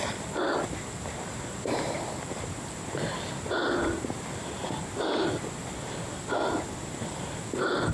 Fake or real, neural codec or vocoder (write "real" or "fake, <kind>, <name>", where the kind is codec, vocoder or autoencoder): real